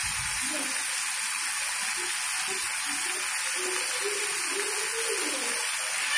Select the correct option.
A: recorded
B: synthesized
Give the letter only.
A